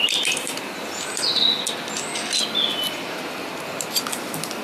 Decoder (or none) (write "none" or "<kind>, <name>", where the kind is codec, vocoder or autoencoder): none